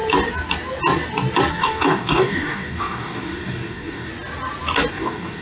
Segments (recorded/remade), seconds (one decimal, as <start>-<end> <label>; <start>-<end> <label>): 0.0-1.5 recorded; 1.5-4.1 remade; 4.1-4.9 recorded; 4.9-5.4 remade